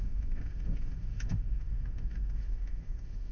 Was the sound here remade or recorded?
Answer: remade